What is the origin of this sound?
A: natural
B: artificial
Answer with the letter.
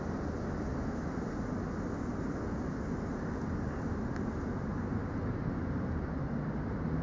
A